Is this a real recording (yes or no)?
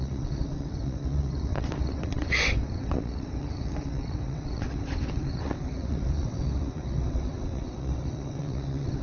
no